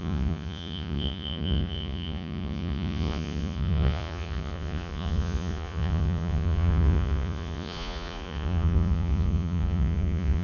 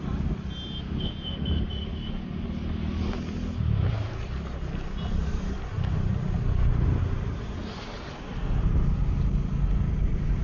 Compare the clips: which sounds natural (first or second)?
second